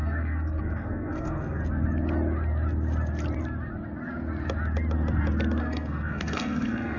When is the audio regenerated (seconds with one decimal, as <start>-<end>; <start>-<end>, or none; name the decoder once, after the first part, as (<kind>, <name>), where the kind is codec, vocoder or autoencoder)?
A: 0.0-1.6 (codec, SNAC); 5.6-7.0